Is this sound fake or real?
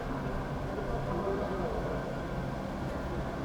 real